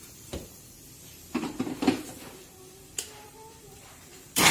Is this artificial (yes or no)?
yes